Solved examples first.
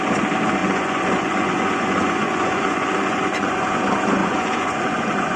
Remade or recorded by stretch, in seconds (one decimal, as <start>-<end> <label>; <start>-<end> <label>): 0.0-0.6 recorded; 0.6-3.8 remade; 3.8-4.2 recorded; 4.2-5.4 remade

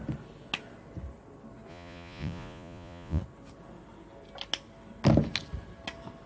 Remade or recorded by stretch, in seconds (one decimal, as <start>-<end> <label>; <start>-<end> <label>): 0.0-1.7 recorded; 1.7-3.2 remade; 3.2-6.3 recorded

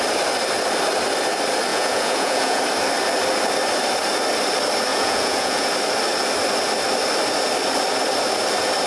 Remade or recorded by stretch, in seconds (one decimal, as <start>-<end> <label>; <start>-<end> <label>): 0.0-1.7 recorded; 1.7-2.6 remade; 2.6-4.9 recorded; 4.9-5.7 remade; 5.7-8.9 recorded

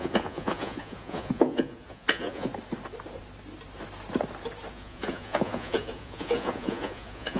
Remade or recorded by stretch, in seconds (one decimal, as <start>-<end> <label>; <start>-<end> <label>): 0.0-2.5 remade; 2.5-4.7 recorded; 4.7-7.4 remade

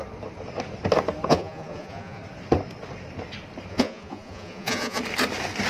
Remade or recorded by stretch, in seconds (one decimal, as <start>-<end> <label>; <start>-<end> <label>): 0.0-1.3 recorded; 1.3-2.2 remade; 2.2-3.7 recorded; 3.7-5.0 remade; 5.0-5.7 recorded

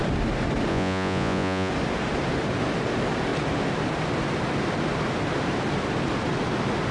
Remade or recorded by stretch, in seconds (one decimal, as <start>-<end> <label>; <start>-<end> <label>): 0.0-0.7 recorded; 0.7-1.7 remade; 1.7-6.9 recorded

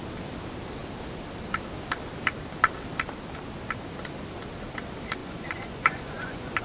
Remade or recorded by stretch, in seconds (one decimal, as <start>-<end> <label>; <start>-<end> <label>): 0.0-5.2 recorded; 5.2-6.6 remade

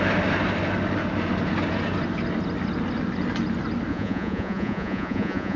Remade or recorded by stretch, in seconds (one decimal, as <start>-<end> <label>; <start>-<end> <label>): 0.0-3.9 recorded; 3.9-5.6 remade